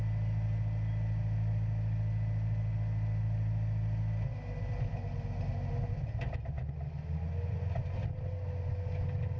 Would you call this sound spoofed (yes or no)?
no